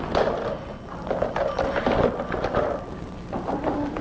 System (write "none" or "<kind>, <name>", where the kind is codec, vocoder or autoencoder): none